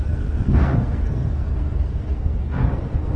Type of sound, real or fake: fake